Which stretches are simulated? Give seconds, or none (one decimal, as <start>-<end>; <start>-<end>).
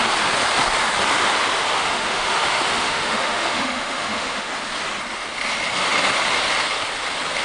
1.7-4.5